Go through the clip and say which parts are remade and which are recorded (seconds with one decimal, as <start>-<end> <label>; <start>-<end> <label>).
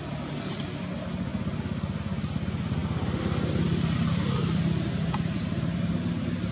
0.0-1.3 recorded; 1.3-2.0 remade; 2.0-2.8 recorded; 2.8-4.4 remade; 4.4-6.5 recorded